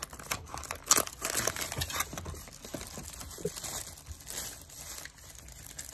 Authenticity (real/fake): real